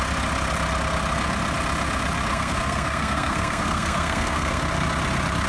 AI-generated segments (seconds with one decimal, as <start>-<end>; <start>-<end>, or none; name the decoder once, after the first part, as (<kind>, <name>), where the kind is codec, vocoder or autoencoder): 2.3-4.6 (codec, SNAC)